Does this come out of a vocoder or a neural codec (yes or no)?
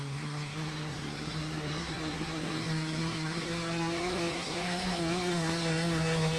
yes